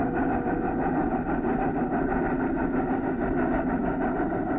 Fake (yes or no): no